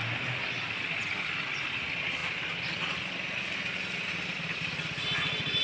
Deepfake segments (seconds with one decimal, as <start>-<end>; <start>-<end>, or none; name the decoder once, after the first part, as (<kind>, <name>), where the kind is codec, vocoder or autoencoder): none